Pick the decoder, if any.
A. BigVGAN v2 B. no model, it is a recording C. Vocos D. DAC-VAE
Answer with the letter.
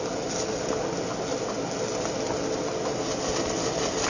B